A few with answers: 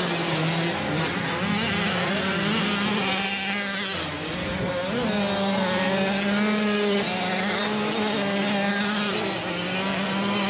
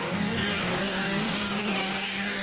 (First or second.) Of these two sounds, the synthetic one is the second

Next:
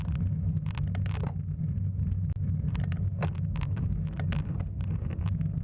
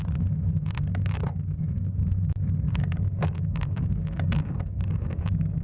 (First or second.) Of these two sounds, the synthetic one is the second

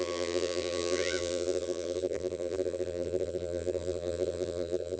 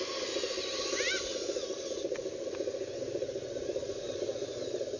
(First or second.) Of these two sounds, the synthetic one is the first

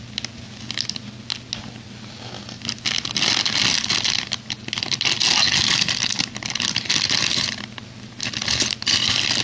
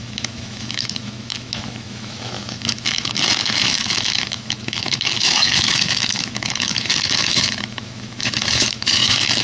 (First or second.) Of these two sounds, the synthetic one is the second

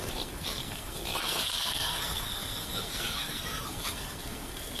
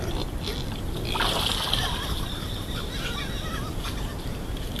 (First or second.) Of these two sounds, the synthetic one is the first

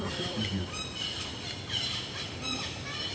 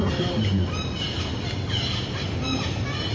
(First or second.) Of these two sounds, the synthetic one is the first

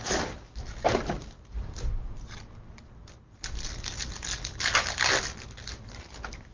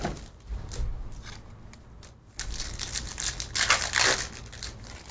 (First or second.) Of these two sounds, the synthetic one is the first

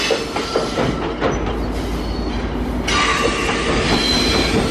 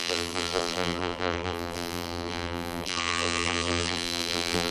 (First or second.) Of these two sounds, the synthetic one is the second